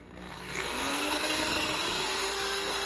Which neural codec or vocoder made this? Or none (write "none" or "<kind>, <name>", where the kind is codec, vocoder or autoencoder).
codec, SNAC